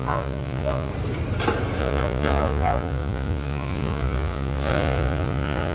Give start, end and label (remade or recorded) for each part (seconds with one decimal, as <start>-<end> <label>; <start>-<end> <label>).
0.0-0.9 remade; 0.9-1.8 recorded; 1.8-5.7 remade